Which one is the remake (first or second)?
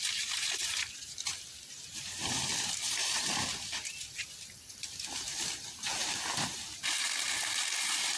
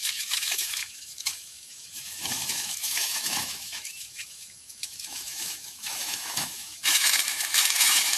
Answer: second